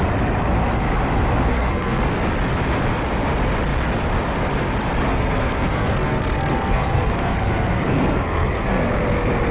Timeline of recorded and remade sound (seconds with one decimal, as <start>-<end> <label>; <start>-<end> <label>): 0.0-1.5 recorded; 1.5-2.0 remade; 2.0-5.1 recorded; 5.1-8.8 remade; 8.8-9.5 recorded